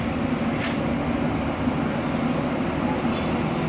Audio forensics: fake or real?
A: real